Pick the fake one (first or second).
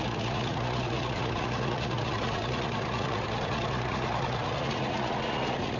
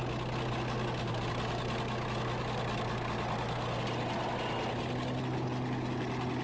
first